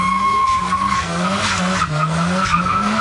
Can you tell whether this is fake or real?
fake